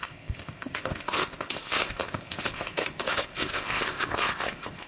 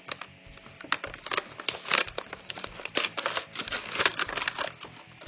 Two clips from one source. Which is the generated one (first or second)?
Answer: first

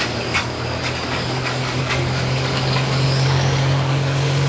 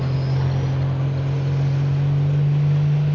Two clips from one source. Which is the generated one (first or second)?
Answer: first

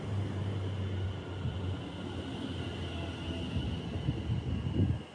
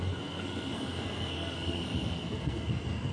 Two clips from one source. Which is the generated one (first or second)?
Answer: second